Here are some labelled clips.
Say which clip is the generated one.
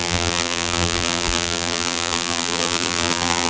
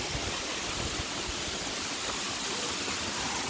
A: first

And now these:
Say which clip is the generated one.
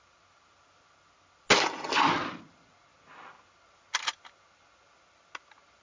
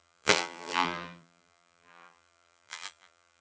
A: second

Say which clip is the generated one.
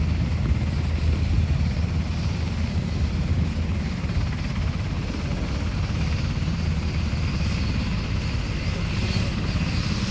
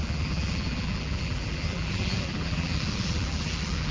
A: second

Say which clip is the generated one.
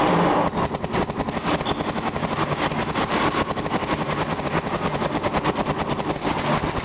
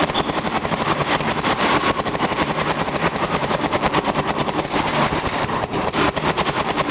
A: second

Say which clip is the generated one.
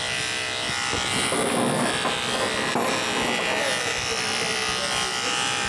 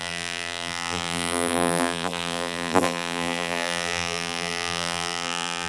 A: second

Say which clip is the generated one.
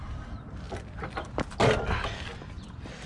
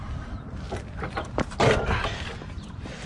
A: second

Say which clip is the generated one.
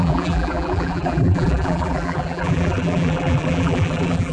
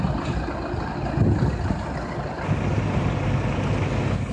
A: first